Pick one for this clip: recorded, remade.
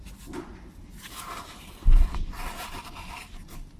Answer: recorded